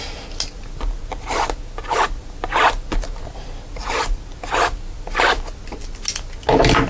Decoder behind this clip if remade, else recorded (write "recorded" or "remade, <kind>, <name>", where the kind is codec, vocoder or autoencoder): recorded